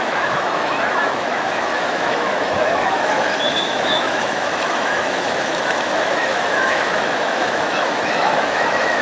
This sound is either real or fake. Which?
fake